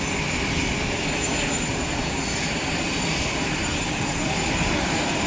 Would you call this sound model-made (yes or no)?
no